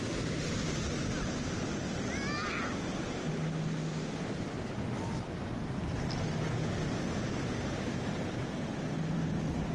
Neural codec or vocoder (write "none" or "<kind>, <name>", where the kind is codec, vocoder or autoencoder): none